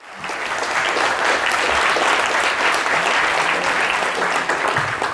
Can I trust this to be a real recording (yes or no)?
yes